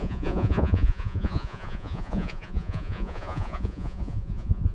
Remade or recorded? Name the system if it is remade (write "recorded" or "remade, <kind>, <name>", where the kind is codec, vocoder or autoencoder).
remade, vocoder, Vocos